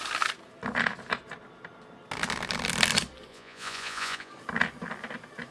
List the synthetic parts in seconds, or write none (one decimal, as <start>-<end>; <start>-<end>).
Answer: 3.3-4.3